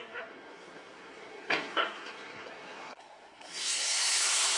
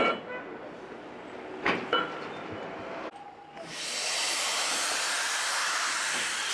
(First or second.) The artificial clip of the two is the first